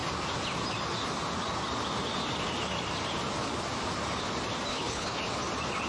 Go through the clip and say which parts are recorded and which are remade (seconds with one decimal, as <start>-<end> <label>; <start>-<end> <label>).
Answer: 0.0-4.7 recorded; 4.7-5.2 remade; 5.2-5.9 recorded

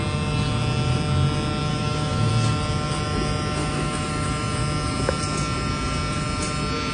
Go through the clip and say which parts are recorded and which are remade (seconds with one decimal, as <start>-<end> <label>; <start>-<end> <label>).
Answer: 0.0-1.7 recorded; 1.7-2.3 remade; 2.3-3.6 recorded; 3.6-4.1 remade; 4.1-6.9 recorded

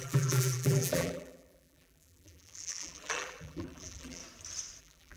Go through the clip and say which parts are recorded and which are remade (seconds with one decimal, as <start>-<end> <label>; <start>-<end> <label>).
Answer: 0.0-4.2 remade; 4.2-4.8 recorded; 4.8-5.2 remade